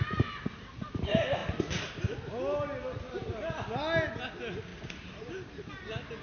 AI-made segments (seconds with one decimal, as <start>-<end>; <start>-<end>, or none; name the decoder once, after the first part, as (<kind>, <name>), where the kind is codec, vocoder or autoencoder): 4.7-5.7 (vocoder, BigVGAN v2)